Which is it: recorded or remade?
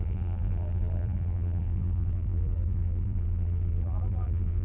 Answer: remade